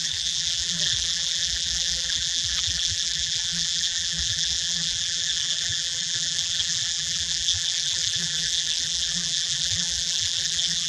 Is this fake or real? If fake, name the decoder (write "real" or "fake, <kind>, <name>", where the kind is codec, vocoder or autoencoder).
fake, vocoder, BigVGAN v2